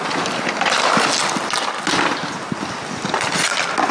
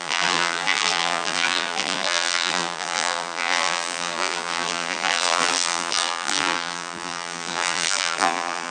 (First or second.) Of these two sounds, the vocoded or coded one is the second